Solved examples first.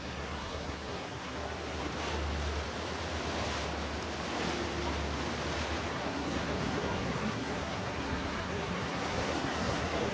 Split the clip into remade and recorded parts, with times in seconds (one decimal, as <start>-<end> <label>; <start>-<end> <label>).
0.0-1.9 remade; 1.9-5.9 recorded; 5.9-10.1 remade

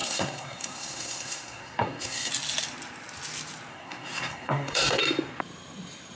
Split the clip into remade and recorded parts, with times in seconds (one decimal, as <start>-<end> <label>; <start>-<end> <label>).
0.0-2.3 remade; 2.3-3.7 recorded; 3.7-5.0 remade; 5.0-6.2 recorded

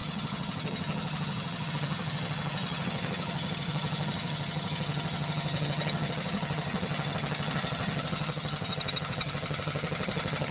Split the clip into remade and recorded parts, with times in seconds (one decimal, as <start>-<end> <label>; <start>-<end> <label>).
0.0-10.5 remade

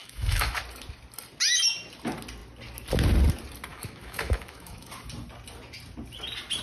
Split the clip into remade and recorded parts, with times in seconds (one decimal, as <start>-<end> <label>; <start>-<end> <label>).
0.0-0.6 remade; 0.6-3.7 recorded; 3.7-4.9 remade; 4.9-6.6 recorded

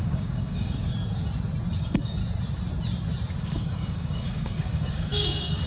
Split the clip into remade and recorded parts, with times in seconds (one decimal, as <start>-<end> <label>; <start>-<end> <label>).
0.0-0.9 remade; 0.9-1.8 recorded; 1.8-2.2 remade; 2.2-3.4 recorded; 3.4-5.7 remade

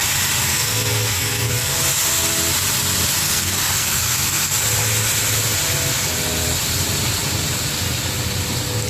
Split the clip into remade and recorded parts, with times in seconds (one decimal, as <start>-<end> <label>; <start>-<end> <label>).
0.0-0.5 recorded; 0.5-1.8 remade; 1.8-3.2 recorded; 3.2-4.6 remade; 4.6-8.9 recorded

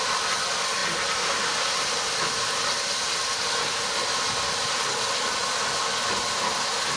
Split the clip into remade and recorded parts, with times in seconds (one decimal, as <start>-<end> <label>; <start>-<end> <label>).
0.0-7.0 recorded